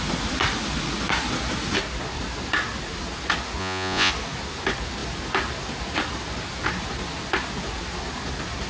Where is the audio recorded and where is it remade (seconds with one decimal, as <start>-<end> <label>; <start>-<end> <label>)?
0.0-3.6 recorded; 3.6-4.1 remade; 4.1-8.7 recorded